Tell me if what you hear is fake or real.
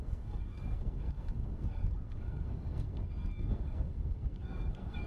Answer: fake